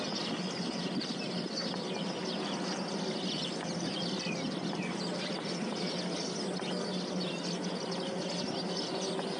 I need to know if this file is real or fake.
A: real